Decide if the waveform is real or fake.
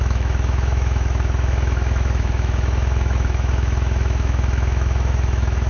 fake